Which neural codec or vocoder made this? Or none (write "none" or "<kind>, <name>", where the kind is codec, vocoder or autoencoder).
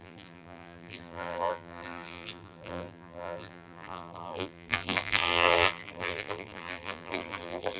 vocoder, BigVGAN v2